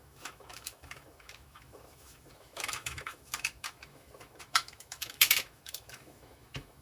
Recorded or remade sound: remade